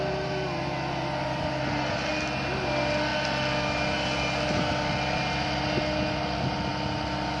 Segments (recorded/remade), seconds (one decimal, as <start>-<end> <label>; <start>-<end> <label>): 0.0-7.4 recorded